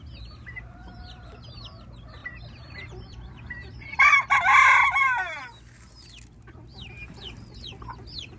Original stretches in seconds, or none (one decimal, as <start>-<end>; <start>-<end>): 0.0-2.2; 5.0-6.7